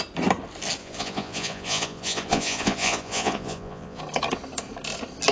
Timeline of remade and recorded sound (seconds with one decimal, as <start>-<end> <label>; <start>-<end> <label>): 0.0-0.8 recorded; 0.8-4.0 remade; 4.0-5.3 recorded